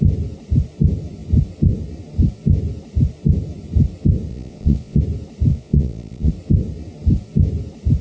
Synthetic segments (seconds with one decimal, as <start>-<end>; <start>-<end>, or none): 4.3-5.0; 5.5-6.3